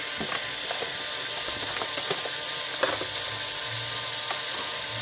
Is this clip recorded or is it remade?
recorded